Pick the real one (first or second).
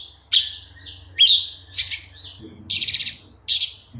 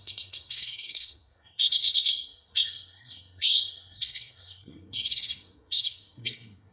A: first